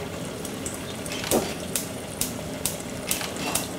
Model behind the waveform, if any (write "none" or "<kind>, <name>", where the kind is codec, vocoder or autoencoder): vocoder, BigVGAN v2